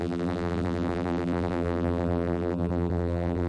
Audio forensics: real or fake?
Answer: fake